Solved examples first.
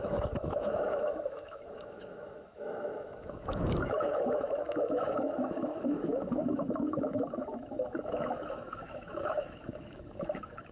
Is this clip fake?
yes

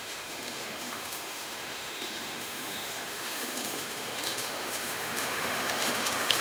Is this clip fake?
yes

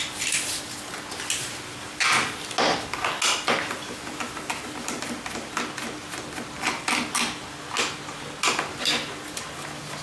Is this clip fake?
no